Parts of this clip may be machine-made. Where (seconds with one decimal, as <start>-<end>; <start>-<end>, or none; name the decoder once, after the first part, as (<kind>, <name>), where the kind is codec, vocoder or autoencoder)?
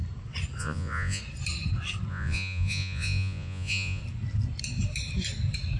0.6-1.2 (vocoder, Vocos); 2.1-4.0